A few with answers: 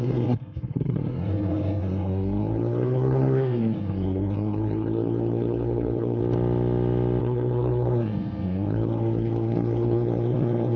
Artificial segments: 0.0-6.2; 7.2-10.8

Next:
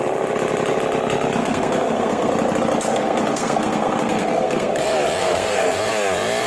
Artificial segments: 1.4-2.3; 2.9-4.8; 5.2-5.8

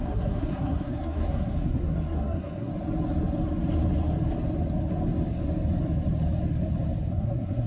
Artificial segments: 0.0-2.7; 7.1-7.7